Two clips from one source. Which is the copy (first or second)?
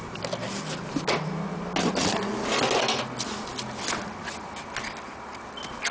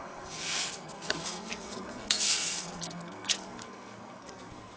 second